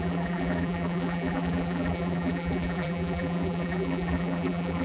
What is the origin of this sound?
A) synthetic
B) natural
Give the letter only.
A